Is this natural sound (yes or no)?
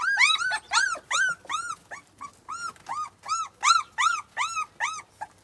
yes